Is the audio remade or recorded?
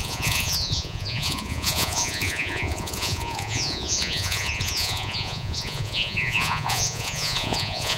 remade